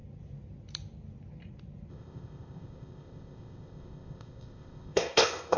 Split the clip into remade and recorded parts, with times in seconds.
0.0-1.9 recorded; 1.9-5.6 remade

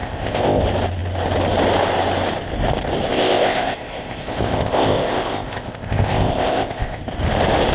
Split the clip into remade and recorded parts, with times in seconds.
0.0-0.6 remade; 0.6-3.1 recorded; 3.1-7.0 remade; 7.0-7.7 recorded